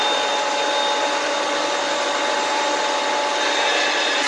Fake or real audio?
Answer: real